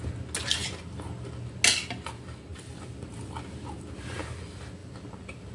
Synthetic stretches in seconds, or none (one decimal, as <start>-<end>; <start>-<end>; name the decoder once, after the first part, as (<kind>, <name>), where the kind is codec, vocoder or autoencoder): 0.6-1.1 (vocoder, BigVGAN v2); 4.8-5.5